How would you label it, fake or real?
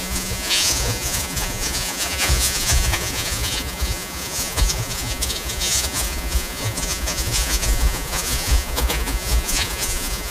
fake